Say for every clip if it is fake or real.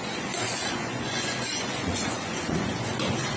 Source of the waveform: fake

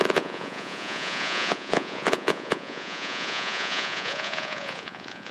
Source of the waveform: fake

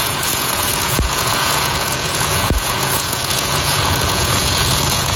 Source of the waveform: fake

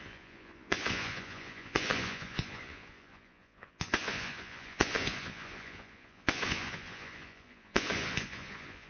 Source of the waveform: fake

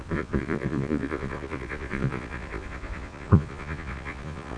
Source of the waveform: fake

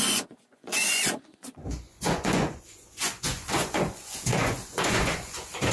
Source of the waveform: fake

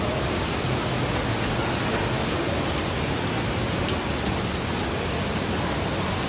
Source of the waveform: real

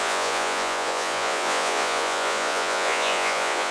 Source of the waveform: fake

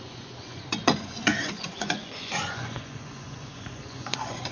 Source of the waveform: fake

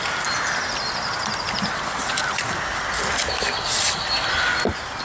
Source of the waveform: real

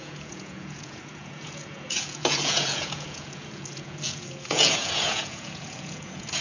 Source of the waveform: fake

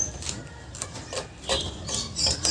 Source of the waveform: real